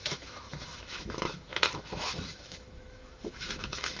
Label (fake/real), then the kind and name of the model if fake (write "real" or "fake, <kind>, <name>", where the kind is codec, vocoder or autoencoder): fake, autoencoder, DAC-VAE